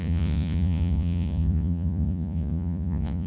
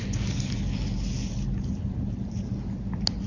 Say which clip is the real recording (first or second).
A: second